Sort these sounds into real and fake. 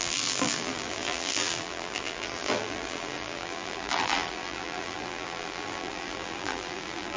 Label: fake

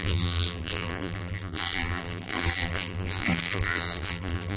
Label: fake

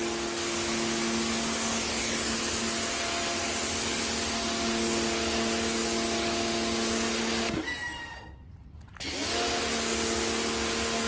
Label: real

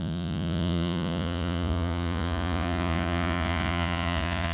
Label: fake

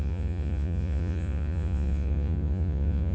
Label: fake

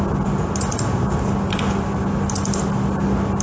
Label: real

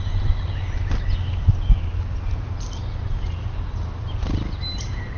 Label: real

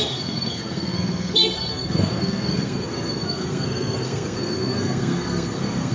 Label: fake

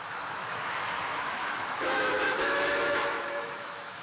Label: fake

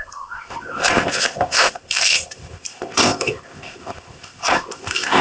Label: fake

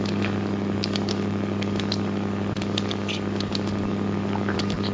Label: fake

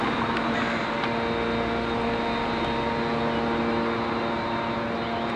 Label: real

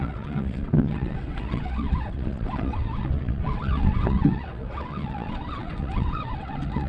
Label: fake